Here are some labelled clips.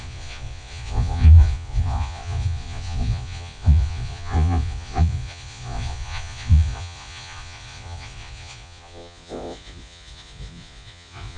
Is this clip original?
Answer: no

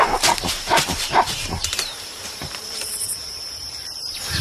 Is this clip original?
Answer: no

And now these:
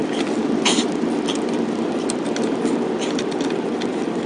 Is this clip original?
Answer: yes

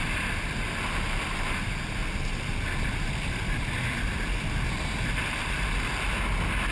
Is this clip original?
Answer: yes